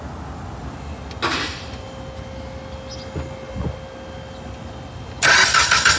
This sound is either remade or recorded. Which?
recorded